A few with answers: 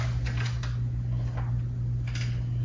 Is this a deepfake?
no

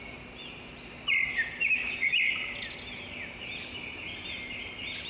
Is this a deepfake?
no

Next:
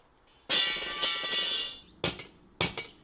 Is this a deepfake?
no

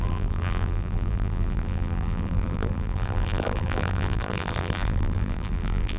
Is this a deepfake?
yes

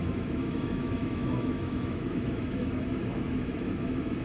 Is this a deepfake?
yes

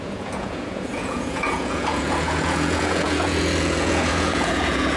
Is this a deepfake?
yes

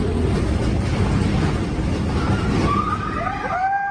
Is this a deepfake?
no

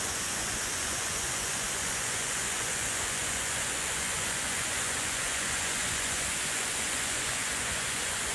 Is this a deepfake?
yes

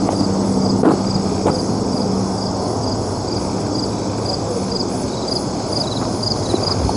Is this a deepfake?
no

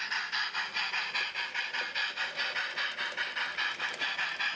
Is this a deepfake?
no